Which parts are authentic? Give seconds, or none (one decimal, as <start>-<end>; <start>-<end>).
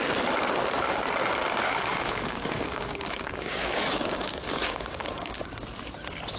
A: 0.0-1.6; 5.4-6.4